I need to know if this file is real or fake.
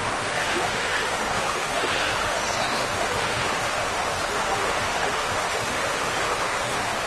fake